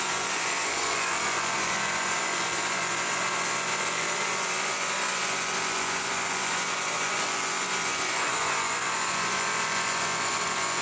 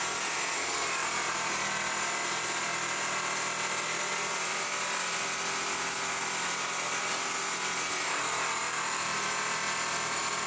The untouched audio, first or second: second